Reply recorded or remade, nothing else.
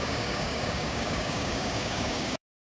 remade